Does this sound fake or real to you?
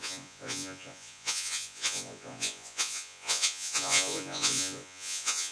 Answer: fake